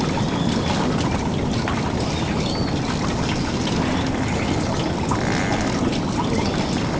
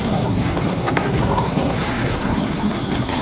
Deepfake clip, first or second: second